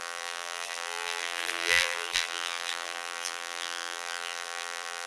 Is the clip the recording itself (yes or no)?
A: no